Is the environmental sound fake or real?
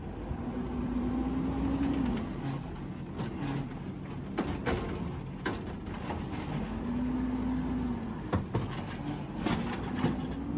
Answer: real